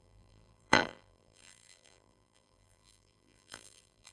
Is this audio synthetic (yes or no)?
yes